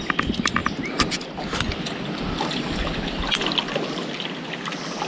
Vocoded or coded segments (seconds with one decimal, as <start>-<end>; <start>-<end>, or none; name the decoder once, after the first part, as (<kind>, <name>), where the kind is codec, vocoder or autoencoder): none